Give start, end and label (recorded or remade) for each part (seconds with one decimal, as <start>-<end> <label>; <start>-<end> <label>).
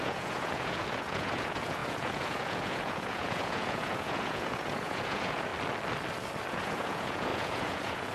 0.0-5.5 remade; 5.5-6.5 recorded; 6.5-8.1 remade